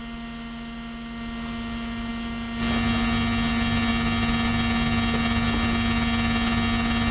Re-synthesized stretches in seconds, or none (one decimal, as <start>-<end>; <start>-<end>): none